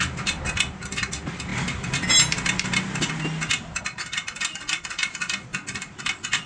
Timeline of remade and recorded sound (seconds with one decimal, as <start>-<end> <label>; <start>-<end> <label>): 0.0-6.5 recorded